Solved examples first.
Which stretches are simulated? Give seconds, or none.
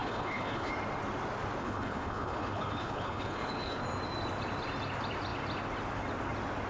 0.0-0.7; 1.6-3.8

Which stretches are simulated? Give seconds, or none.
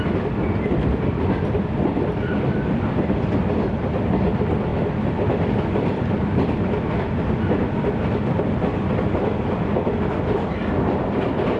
none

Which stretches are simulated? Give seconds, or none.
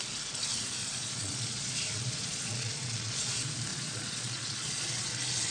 0.8-3.3; 3.7-5.1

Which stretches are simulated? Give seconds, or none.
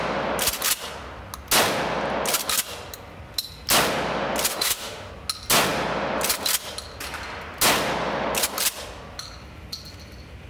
4.5-5.1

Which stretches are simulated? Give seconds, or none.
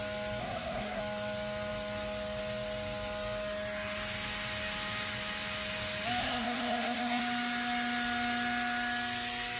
0.4-1.0; 6.2-7.2